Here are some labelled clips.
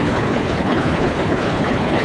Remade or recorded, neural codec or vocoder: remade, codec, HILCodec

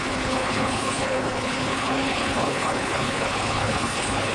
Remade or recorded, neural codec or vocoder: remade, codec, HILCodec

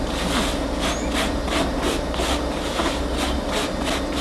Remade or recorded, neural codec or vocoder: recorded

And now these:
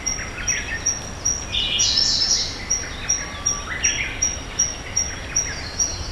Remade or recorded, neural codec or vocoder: recorded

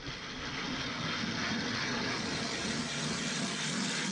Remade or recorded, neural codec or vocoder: recorded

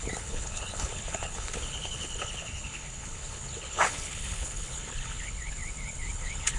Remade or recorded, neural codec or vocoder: remade, codec, HILCodec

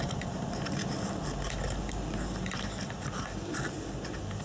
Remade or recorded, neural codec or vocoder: recorded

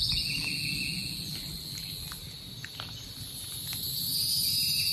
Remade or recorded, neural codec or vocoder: recorded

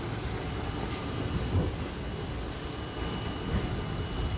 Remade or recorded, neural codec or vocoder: recorded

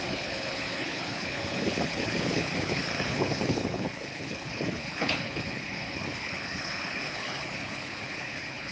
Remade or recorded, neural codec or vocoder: remade, codec, HILCodec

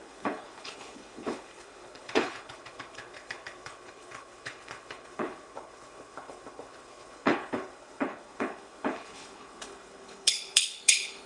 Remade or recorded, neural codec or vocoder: remade, codec, HILCodec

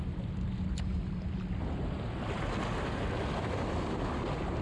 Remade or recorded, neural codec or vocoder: recorded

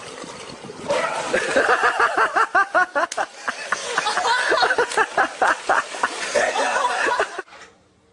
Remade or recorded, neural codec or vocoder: recorded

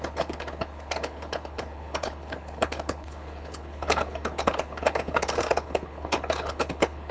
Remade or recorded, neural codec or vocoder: remade, codec, HILCodec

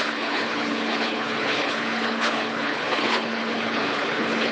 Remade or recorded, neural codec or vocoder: remade, codec, HILCodec